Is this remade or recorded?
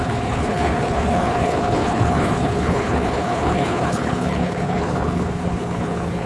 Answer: remade